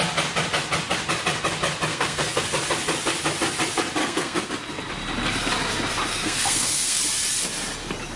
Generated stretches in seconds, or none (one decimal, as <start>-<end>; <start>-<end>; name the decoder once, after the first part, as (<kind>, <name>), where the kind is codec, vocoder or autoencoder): 1.9-2.4 (codec, SNAC); 4.0-4.5; 6.1-7.0